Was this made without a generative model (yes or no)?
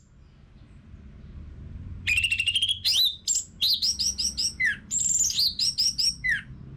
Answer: yes